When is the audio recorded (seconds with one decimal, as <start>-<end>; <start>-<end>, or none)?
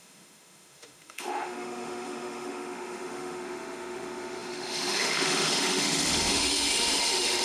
none